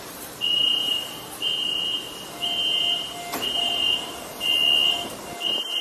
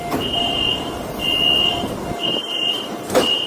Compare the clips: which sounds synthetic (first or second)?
second